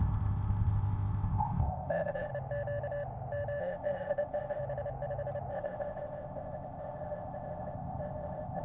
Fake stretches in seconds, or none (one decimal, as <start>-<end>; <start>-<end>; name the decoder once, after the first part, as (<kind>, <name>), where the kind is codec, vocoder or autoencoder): 0.0-2.3 (codec, ZipCodec); 3.6-4.6; 5.5-8.6